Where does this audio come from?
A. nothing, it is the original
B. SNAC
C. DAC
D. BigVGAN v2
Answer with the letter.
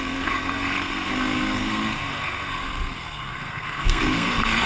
B